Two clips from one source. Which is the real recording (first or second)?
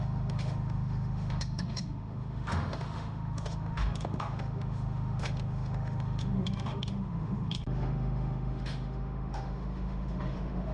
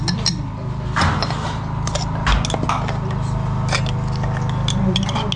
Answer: second